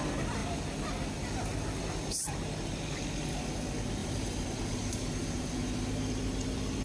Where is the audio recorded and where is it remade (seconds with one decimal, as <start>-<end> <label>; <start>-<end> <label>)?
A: 0.0-4.0 recorded; 4.0-5.5 remade; 5.5-6.8 recorded